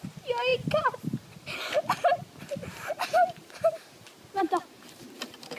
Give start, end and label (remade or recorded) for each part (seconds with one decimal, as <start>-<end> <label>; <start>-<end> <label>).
0.0-2.6 recorded; 2.6-4.4 remade; 4.4-5.6 recorded